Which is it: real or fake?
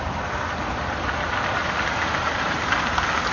real